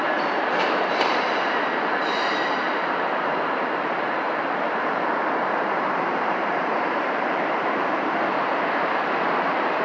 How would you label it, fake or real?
fake